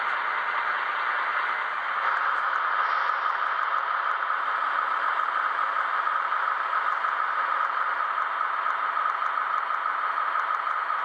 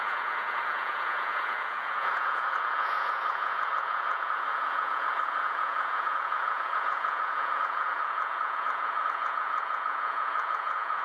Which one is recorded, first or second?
first